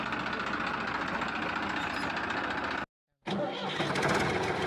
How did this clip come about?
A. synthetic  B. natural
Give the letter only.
B